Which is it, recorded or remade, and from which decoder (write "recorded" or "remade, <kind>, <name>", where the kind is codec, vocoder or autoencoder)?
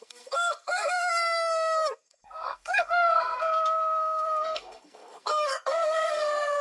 remade, codec, SNAC